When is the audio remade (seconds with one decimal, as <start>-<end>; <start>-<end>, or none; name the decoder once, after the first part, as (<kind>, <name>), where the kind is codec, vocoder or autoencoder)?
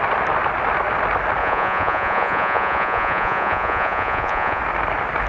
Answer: 1.4-4.6 (vocoder, Vocos)